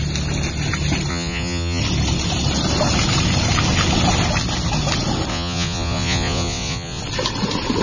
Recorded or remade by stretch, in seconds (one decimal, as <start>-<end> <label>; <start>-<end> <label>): 0.0-1.1 recorded; 1.1-1.8 remade; 1.8-5.3 recorded; 5.3-7.0 remade; 7.0-7.8 recorded